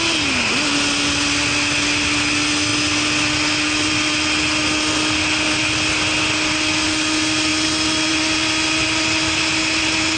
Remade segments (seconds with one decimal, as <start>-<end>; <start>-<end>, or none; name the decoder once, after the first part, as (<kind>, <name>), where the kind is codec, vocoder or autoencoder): none